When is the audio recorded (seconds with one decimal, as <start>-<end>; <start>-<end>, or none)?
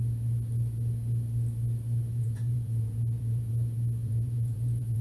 0.0-2.1; 3.5-4.0